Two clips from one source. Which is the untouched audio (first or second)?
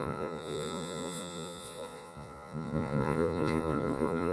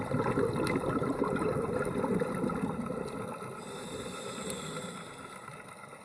second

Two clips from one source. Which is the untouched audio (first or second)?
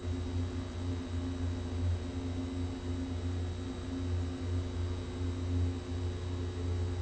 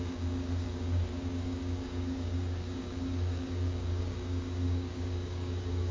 first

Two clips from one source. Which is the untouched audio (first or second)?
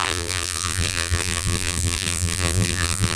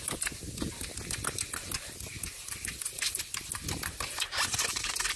second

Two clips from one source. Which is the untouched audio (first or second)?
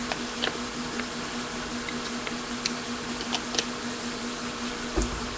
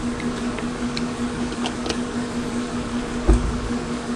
first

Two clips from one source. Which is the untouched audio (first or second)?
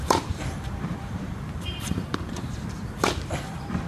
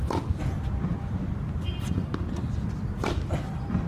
second